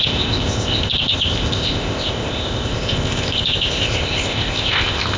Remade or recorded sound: remade